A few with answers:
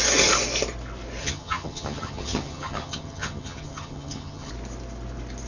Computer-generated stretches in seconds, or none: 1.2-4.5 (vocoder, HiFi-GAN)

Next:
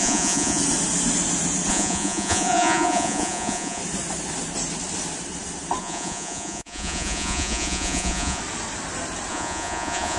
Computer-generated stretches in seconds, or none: 0.0-0.6 (vocoder, Vocos); 1.7-3.8; 5.8-8.4; 9.3-10.2